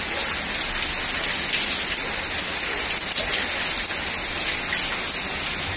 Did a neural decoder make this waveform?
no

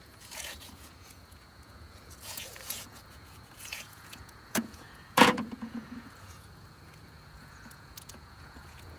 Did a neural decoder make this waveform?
yes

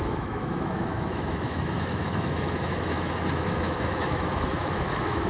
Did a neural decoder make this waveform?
yes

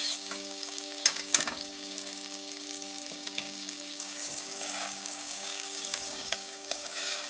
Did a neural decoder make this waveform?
yes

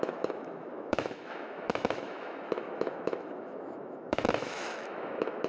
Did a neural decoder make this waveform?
yes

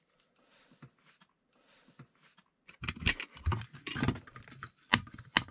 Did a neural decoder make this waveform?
no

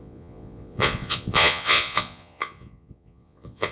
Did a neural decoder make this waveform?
yes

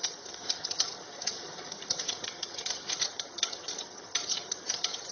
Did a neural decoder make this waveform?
yes